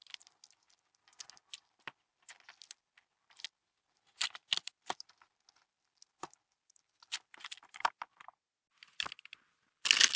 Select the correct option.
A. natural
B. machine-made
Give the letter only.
A